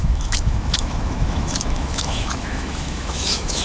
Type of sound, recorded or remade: remade